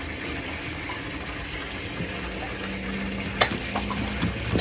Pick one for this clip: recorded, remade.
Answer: recorded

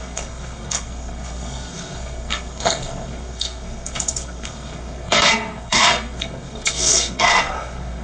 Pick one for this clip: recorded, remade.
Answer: remade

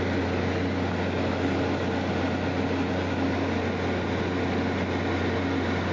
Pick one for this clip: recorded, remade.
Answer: recorded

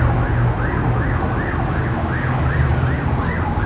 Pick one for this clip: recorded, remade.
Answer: recorded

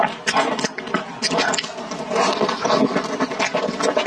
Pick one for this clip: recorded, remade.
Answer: recorded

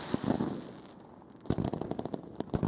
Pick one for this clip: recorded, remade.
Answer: recorded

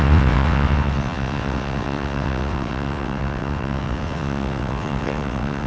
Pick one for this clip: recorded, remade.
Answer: remade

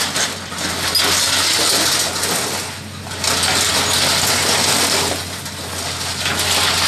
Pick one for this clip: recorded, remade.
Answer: recorded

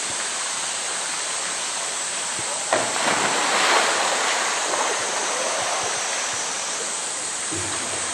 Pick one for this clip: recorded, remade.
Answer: remade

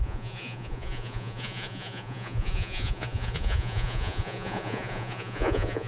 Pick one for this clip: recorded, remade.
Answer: remade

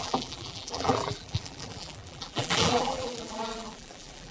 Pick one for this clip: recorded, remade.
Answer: remade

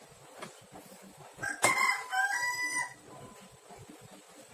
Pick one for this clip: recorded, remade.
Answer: recorded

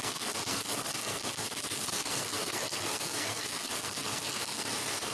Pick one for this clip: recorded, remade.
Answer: remade